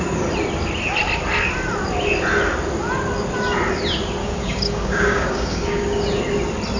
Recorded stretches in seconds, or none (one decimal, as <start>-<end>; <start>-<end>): 0.0-4.2; 6.0-6.8